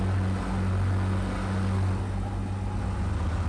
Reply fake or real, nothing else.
real